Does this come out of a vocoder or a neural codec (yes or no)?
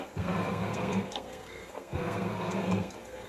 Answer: yes